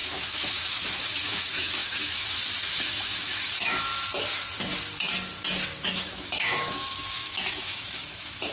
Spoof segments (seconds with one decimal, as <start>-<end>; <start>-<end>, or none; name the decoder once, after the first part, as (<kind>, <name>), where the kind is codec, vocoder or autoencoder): 0.0-3.9 (autoencoder, DAC-VAE); 5.8-8.5